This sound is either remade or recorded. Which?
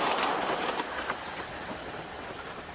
recorded